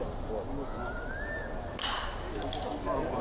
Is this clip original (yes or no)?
yes